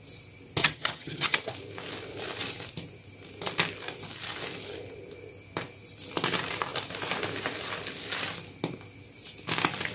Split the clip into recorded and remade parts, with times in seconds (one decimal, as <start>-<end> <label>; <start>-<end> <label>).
0.0-0.6 recorded; 0.6-1.5 remade; 1.5-9.9 recorded